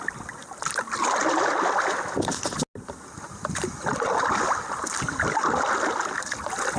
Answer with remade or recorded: recorded